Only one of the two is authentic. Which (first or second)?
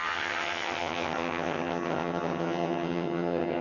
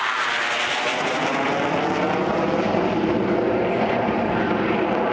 second